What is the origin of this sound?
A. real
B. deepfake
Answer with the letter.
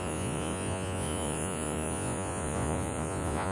B